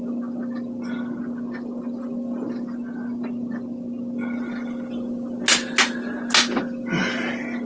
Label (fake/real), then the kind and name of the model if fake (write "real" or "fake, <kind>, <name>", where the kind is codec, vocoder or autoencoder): real